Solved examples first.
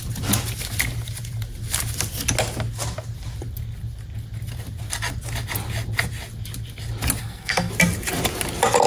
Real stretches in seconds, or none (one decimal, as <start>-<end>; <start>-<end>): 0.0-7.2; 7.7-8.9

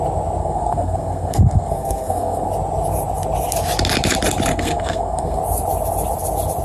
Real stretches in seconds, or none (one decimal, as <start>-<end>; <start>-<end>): 0.0-0.4; 2.5-4.5; 5.4-6.6

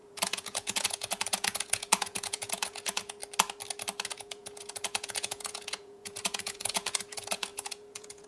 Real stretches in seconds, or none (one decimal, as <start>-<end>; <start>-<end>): 3.2-4.1